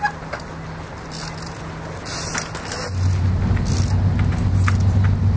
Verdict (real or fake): real